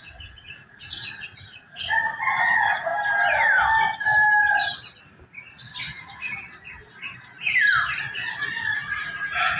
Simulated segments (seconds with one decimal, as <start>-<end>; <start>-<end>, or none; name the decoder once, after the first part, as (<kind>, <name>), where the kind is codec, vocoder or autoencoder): 0.0-2.9 (vocoder, Vocos); 5.8-6.3; 8.6-9.6